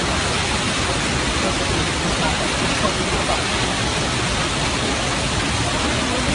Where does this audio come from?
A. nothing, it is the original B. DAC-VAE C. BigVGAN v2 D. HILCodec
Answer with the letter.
A